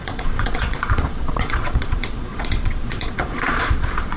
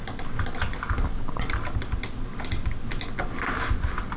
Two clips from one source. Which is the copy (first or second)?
first